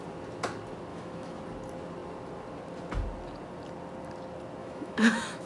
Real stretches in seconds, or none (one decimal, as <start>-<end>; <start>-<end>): 0.0-0.9; 1.4-4.6